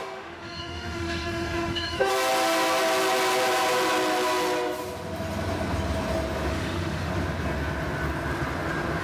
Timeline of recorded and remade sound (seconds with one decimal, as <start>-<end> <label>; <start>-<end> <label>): 0.0-2.1 remade; 2.1-6.5 recorded; 6.5-7.1 remade; 7.1-9.0 recorded

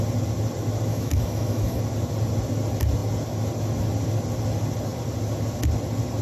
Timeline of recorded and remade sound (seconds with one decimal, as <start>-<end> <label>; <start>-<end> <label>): 0.0-0.9 recorded; 0.9-1.8 remade; 1.8-6.2 recorded